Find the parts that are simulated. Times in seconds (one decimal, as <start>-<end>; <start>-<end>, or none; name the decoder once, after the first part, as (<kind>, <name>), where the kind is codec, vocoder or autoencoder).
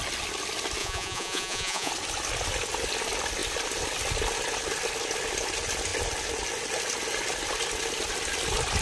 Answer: 0.8-1.9 (vocoder, Vocos)